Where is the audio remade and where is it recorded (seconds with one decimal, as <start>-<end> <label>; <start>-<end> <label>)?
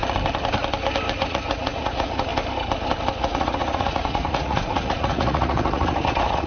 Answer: 0.0-1.2 recorded; 1.2-2.3 remade; 2.3-3.2 recorded; 3.2-6.5 remade